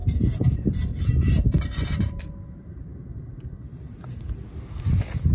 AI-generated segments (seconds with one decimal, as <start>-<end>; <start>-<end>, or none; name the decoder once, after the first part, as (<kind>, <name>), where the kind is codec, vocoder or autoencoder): 0.0-3.2 (vocoder, BigVGAN v2)

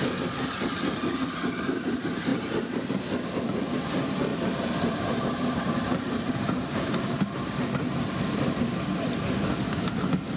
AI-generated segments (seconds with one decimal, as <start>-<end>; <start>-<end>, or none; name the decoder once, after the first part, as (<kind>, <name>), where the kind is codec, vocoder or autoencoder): 2.3-2.9 (vocoder, BigVGAN v2); 4.3-8.2

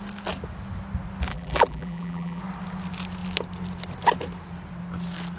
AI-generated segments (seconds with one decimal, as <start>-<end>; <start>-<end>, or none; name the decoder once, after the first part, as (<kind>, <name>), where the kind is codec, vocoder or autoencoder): 1.3-2.4 (vocoder, BigVGAN v2)

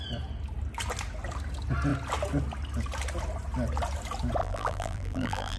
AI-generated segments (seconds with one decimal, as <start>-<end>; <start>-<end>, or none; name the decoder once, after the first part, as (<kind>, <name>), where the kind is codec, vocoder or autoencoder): 4.4-5.6 (vocoder, BigVGAN v2)

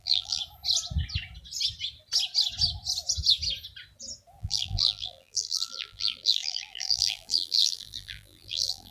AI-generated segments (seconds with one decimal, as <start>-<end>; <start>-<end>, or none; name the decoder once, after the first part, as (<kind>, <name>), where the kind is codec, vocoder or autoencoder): 0.0-0.4 (vocoder, BigVGAN v2); 4.4-8.9

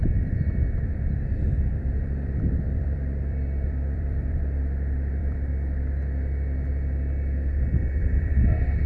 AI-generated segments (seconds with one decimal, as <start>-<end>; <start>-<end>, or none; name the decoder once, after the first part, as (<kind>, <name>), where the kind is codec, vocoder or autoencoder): 1.7-5.5 (vocoder, BigVGAN v2); 8.0-8.9